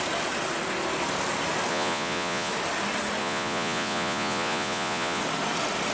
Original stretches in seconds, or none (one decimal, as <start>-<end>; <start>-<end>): 0.0-1.7; 2.5-3.2; 5.2-5.9